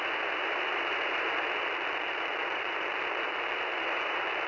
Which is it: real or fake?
real